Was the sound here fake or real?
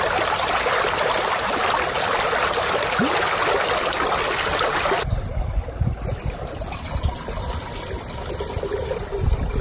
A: real